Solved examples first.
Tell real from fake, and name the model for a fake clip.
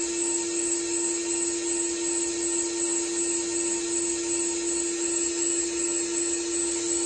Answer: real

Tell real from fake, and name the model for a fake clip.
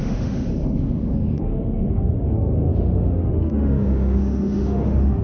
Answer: fake, autoencoder, DAC-VAE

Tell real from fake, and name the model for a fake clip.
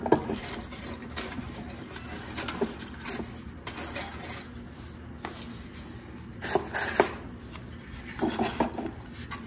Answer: real